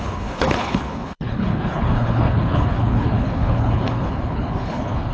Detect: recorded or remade remade